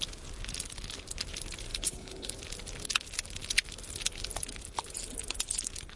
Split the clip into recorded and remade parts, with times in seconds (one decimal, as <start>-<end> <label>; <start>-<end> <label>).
0.0-1.7 recorded; 1.7-2.4 remade; 2.4-6.0 recorded